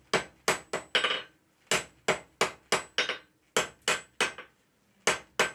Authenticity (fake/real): real